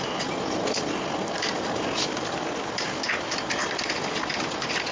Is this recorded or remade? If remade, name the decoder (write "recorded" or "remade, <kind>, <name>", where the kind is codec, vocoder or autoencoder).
recorded